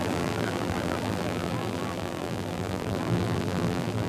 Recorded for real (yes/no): no